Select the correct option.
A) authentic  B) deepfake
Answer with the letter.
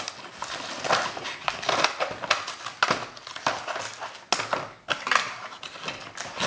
A